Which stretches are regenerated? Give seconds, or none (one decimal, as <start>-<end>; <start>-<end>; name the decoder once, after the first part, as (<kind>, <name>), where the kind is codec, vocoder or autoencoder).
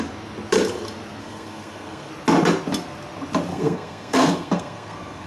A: 1.2-2.1 (codec, SNAC); 3.5-5.3